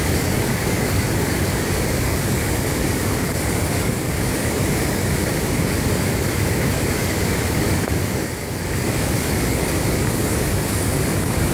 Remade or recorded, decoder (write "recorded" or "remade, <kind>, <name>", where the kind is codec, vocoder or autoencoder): remade, codec, DAC